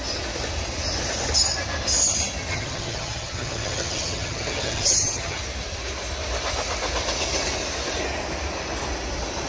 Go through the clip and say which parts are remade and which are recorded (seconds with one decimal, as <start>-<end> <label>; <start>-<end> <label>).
0.0-2.5 recorded; 2.5-5.4 remade; 5.4-9.5 recorded